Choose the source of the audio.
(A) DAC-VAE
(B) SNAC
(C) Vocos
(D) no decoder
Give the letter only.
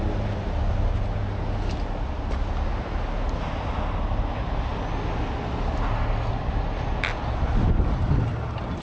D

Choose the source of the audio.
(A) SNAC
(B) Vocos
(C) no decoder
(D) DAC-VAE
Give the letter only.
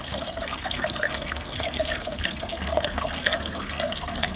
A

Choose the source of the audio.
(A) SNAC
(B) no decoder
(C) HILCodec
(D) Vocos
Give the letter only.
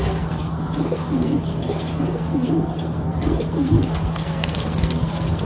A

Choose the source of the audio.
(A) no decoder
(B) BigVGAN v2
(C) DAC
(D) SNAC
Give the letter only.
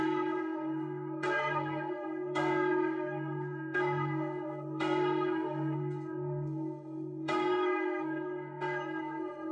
D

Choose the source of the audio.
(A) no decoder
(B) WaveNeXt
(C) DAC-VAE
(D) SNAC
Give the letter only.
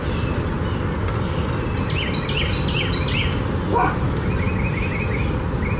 A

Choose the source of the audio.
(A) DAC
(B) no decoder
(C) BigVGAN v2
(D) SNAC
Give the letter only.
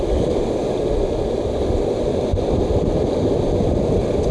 B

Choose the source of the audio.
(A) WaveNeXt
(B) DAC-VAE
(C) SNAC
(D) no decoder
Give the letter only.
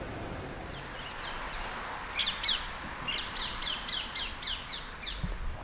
D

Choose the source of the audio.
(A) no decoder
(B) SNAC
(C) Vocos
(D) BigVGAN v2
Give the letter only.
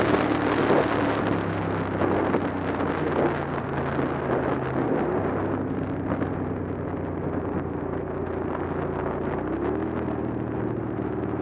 A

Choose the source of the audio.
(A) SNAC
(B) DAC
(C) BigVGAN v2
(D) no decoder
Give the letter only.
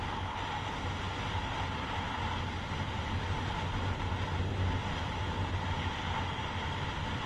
D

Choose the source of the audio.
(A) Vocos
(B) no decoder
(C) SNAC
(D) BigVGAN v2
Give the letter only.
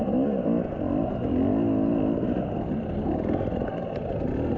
B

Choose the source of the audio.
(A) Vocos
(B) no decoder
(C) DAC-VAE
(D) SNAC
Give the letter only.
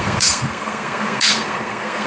D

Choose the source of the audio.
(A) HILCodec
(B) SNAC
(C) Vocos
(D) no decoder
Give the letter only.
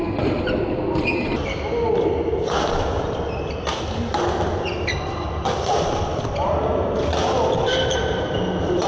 D